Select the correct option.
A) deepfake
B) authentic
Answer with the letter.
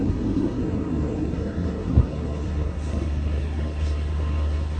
A